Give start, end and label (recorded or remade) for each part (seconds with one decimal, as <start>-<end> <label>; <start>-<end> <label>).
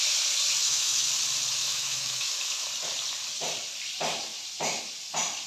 0.0-0.6 recorded; 0.6-1.1 remade; 1.1-1.6 recorded; 1.6-2.7 remade; 2.7-5.5 recorded